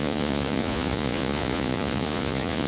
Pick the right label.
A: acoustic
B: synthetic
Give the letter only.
B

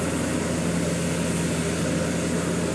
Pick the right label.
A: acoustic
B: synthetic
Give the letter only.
A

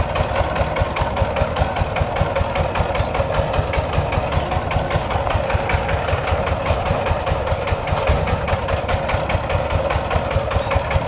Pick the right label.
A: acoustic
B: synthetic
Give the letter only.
A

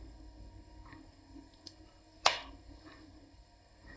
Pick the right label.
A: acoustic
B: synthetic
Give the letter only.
B